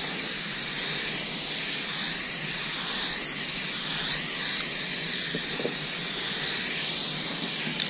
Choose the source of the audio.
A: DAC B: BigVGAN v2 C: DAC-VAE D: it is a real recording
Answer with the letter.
D